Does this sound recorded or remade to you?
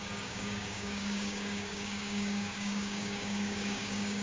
remade